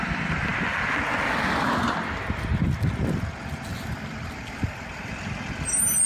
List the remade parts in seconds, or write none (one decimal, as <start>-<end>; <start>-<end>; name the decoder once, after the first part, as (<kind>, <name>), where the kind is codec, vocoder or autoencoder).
3.7-5.1 (vocoder, BigVGAN v2)